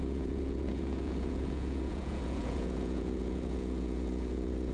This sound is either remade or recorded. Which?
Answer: remade